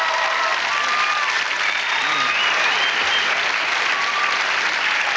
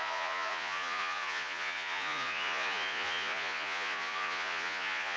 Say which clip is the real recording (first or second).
first